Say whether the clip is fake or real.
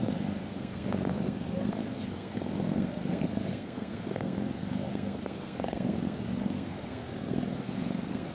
fake